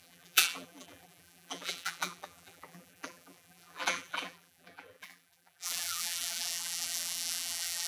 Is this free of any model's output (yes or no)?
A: no